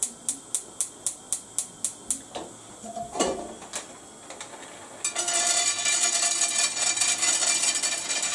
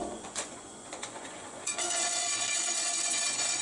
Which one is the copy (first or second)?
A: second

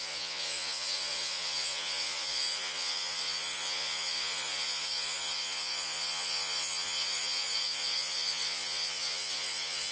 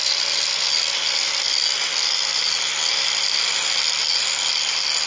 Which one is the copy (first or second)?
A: first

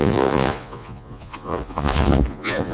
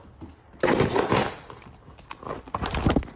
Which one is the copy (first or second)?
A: first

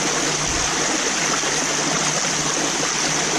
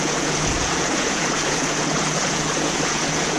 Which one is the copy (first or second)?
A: second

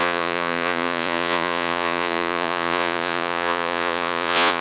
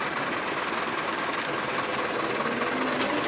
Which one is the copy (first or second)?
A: first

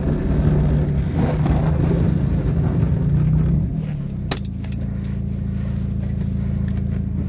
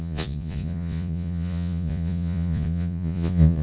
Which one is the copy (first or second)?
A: second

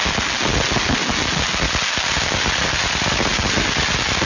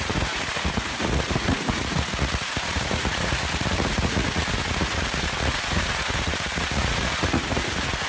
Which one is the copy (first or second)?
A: second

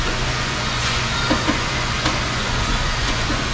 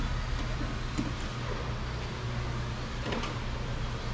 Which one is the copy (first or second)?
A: first